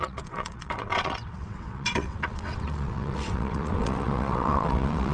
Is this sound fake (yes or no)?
yes